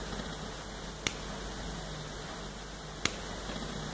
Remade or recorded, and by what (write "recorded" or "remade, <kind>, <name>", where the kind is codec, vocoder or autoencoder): recorded